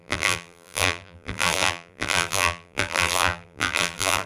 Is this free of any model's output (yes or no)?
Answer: no